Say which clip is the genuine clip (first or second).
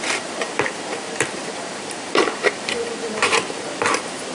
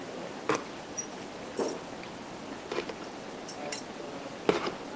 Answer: second